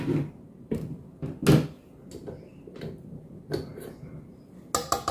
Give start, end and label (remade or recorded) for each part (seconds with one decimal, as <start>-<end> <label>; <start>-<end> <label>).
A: 0.0-5.1 recorded